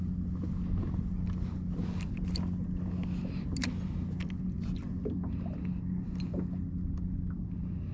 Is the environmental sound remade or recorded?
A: recorded